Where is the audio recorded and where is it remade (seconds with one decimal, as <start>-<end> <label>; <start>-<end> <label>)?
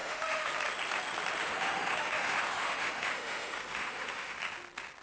0.0-0.5 remade; 0.5-1.4 recorded; 1.4-4.4 remade; 4.4-5.0 recorded